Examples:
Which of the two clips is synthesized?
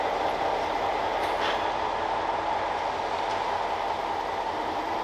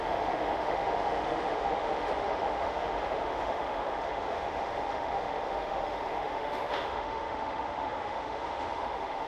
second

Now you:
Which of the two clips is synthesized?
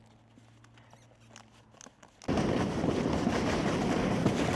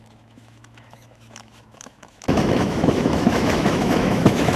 second